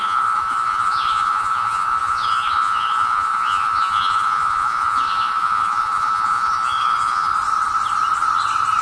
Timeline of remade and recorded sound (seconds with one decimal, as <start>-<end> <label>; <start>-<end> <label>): 0.0-7.3 remade; 7.3-8.8 recorded